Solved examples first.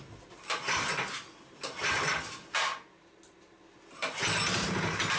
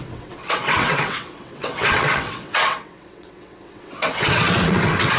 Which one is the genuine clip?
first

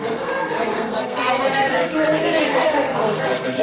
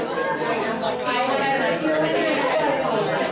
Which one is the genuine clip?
second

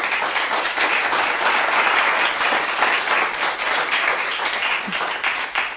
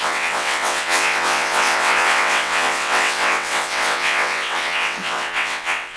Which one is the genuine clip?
first